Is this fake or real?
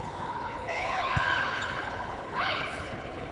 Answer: fake